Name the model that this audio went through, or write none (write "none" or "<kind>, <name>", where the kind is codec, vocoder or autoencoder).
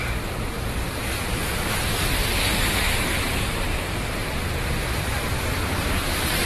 vocoder, BigVGAN v2